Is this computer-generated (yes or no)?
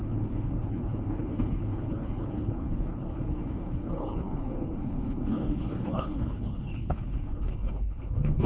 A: yes